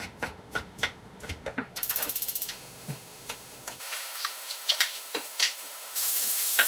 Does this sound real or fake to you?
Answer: fake